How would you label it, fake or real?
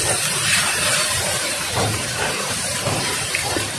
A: fake